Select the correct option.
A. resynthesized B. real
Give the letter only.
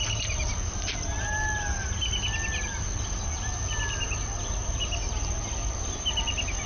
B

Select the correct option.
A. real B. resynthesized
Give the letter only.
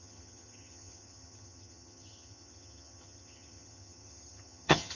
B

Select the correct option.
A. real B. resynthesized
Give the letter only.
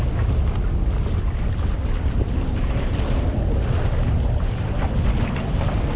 A